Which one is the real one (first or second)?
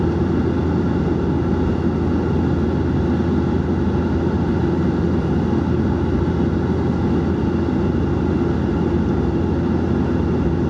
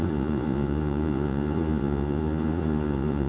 first